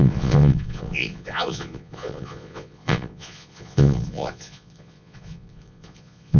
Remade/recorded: remade